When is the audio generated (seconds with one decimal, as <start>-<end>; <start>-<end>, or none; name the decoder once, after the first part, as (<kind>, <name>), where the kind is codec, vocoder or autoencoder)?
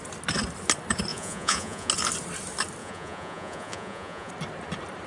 1.1-1.9 (vocoder, Vocos); 2.8-4.3